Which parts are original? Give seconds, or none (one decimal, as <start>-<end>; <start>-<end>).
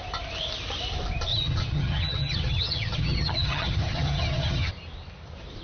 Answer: 0.0-1.3; 4.7-5.6